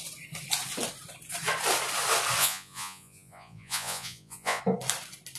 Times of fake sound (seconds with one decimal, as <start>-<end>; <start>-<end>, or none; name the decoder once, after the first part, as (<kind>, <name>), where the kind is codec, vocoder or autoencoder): 2.4-4.6 (vocoder, Vocos)